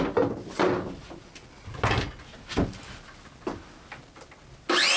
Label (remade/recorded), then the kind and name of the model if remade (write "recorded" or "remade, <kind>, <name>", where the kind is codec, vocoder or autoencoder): recorded